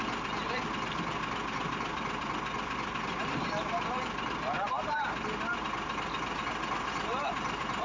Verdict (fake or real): real